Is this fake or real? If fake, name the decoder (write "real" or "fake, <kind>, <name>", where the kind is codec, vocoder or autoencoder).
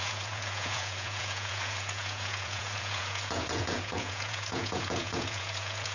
fake, vocoder, Vocos